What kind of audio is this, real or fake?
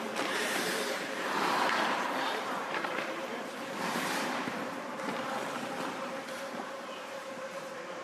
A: fake